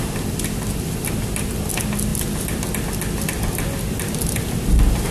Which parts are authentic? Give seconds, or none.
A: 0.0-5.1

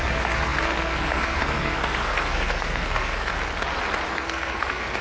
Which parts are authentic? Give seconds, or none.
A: 3.3-4.1

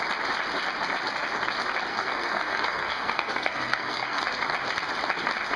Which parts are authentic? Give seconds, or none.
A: 0.0-1.9; 4.2-5.6

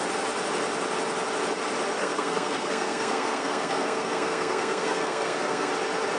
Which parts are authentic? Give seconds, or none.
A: 0.0-2.0; 5.7-6.2